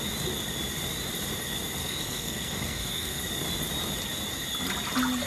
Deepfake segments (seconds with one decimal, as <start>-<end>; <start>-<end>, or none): 1.8-3.2